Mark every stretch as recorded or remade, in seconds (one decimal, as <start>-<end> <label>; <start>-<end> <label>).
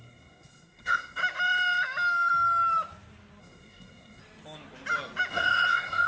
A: 0.0-1.2 remade; 1.2-3.4 recorded; 3.4-4.2 remade; 4.2-5.3 recorded; 5.3-6.1 remade